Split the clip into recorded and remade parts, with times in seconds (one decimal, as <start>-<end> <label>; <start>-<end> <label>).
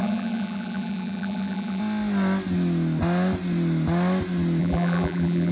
0.0-1.8 remade; 1.8-4.6 recorded; 4.6-5.5 remade